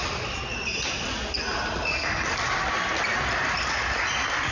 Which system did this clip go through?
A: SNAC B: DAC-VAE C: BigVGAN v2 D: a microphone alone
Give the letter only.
D